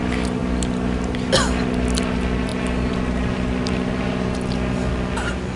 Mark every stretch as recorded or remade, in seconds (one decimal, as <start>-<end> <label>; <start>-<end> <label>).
0.0-5.6 recorded